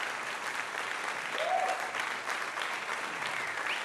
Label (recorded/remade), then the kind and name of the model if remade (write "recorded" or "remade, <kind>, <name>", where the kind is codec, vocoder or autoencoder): recorded